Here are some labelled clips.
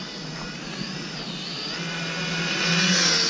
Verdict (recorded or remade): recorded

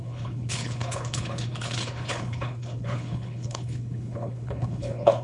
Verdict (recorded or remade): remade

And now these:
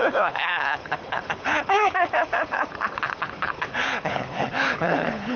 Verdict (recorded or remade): remade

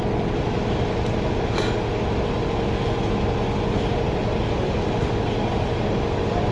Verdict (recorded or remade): recorded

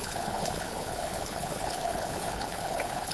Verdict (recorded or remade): remade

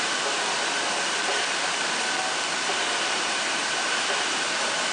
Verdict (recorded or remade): recorded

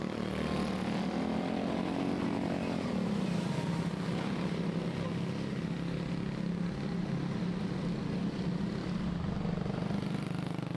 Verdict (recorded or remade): recorded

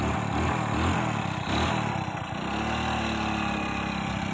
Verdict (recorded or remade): recorded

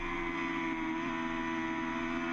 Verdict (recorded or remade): recorded